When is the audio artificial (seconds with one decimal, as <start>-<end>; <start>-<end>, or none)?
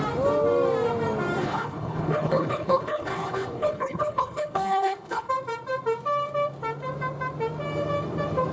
1.4-5.3